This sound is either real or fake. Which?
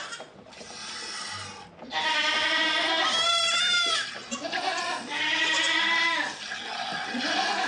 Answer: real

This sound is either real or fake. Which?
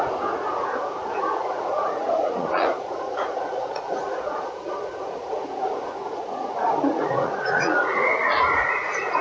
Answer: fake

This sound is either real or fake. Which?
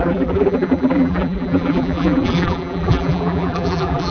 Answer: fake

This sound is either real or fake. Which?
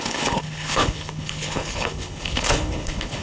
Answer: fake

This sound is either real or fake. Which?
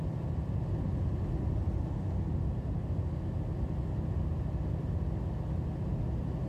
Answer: real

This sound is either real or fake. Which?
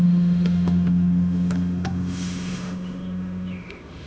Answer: fake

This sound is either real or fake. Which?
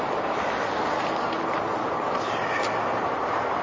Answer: real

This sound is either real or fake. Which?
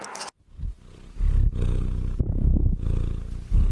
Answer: real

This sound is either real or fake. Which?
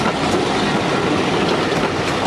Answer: real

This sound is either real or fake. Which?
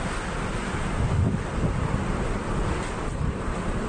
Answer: fake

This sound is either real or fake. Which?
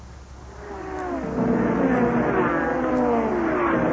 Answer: real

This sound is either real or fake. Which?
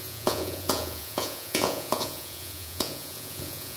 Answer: fake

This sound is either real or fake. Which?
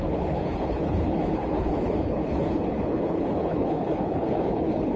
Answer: fake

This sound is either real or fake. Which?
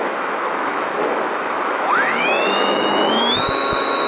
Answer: fake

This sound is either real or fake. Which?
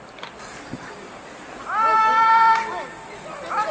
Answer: fake